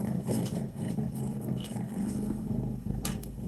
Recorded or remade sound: remade